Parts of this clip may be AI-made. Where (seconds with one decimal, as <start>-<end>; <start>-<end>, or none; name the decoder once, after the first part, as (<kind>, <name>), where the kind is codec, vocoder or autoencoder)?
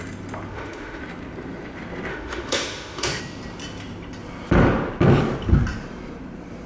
0.5-1.0 (autoencoder, DAC-VAE); 2.1-3.2